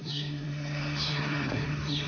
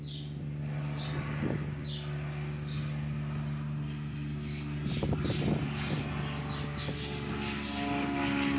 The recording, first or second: second